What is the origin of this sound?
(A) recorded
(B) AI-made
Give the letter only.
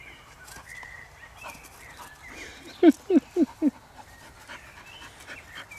A